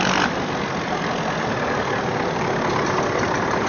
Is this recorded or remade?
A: recorded